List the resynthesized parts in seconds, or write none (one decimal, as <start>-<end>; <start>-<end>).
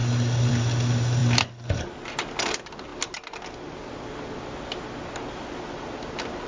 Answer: none